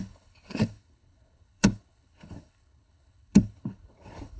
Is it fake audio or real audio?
fake